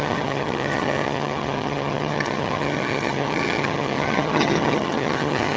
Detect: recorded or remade remade